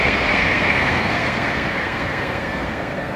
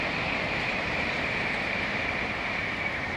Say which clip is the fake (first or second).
first